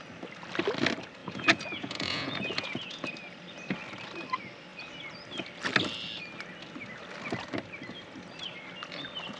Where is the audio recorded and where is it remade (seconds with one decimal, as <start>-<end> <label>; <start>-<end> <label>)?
0.0-1.2 recorded; 1.2-3.1 remade; 3.1-9.4 recorded